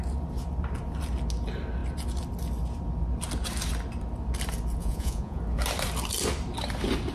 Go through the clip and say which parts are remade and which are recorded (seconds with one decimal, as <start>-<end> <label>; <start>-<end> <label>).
0.0-4.8 recorded; 4.8-5.4 remade; 5.4-7.1 recorded